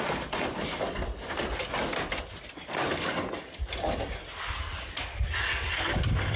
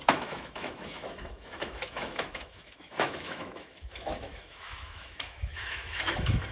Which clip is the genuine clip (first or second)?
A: first